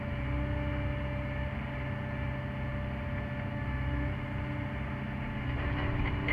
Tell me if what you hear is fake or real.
real